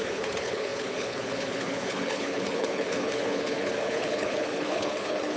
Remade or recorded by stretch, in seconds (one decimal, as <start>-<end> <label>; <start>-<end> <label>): 0.0-5.4 remade